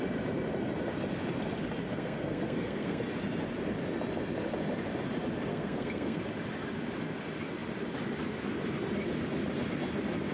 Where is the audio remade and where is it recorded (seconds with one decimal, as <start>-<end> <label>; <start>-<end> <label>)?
0.0-1.9 recorded; 1.9-3.0 remade; 3.0-5.5 recorded; 5.5-6.2 remade; 6.2-10.3 recorded